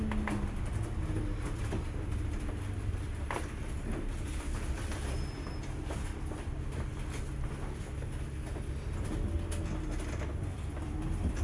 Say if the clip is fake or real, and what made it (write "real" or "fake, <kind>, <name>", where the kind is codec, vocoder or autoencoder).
real